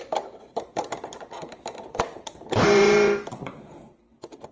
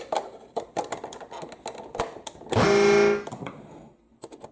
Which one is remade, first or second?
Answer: first